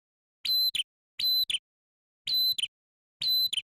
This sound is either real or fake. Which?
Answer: real